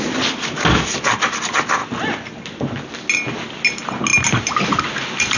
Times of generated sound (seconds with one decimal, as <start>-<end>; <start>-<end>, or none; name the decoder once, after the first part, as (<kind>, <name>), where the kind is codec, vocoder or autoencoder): 1.8-2.8 (vocoder, BigVGAN v2)